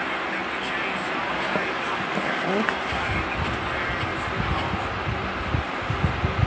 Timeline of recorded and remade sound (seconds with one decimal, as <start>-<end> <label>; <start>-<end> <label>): 0.0-6.5 recorded